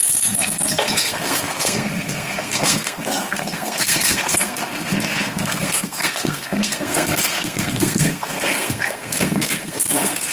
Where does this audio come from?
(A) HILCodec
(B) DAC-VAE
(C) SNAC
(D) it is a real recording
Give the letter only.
C